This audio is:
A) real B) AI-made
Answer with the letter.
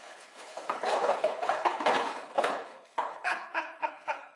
B